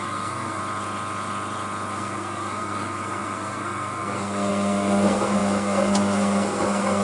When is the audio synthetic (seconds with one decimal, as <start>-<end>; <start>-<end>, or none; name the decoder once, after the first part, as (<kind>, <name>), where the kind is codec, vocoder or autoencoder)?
0.0-0.6 (codec, SNAC); 1.9-7.0